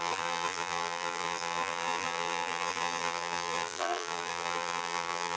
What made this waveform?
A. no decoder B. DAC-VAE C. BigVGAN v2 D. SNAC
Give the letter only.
C